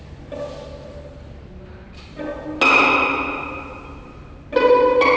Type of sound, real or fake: real